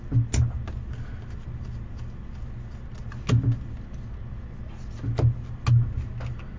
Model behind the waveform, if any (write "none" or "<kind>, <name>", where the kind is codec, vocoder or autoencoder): none